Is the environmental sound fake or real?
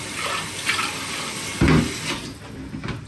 real